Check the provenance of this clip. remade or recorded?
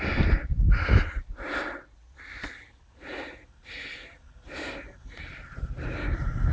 recorded